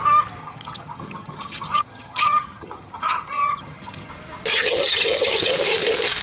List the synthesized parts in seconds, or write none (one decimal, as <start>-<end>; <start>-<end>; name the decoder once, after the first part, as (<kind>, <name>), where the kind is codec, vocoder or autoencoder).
0.4-4.1 (vocoder, HiFi-GAN); 4.5-5.5